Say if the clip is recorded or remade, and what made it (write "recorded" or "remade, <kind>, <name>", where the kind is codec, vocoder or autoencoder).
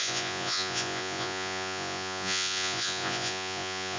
remade, vocoder, Vocos